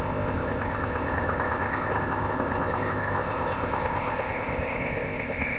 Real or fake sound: fake